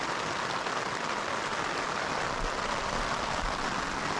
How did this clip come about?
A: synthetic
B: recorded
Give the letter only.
B